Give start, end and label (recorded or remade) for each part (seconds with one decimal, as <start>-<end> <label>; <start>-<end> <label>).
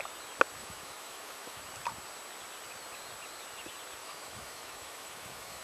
0.0-0.6 recorded; 0.6-1.6 remade; 1.6-4.0 recorded; 4.0-5.6 remade